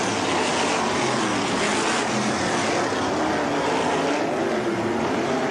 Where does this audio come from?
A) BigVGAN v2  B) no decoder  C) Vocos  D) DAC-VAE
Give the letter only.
B